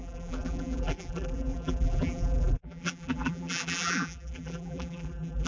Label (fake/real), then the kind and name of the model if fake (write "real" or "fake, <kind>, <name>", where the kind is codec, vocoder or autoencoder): fake, vocoder, BigVGAN v2